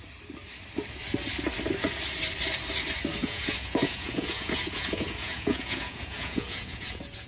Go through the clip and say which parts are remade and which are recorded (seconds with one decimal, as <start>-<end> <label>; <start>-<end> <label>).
0.0-3.2 recorded; 3.2-7.3 remade